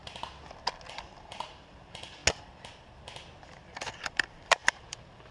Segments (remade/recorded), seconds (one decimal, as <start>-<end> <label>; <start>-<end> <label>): 0.0-0.9 recorded; 0.9-2.2 remade; 2.2-3.4 recorded; 3.4-5.3 remade